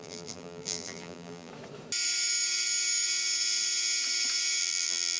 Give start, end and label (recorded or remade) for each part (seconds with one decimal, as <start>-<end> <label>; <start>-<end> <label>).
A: 0.0-1.5 remade; 1.5-4.6 recorded; 4.6-5.2 remade